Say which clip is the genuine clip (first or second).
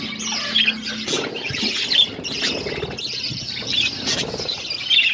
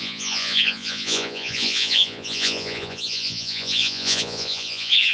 first